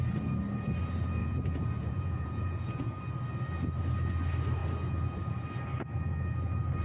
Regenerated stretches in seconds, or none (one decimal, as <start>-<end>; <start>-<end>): 1.2-3.0